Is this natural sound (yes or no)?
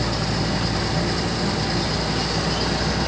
yes